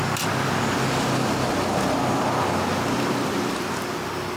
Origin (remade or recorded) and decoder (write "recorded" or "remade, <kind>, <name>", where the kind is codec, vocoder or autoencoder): recorded